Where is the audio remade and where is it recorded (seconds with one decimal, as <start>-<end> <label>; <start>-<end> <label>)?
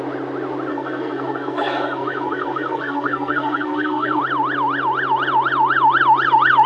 0.0-0.7 recorded; 0.7-4.2 remade; 4.2-6.7 recorded